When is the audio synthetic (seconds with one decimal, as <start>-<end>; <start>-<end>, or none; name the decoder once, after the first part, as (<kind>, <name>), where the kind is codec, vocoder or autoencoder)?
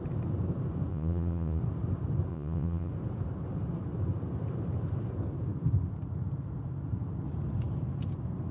0.9-1.6 (vocoder, Vocos); 2.3-2.9